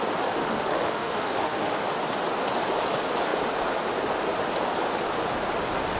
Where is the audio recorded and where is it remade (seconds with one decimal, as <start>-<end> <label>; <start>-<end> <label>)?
0.0-0.4 recorded; 0.4-1.8 remade; 1.8-6.0 recorded